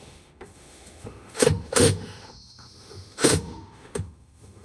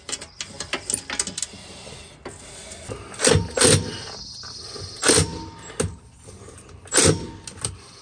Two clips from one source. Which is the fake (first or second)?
first